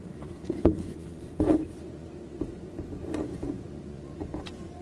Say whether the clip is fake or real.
fake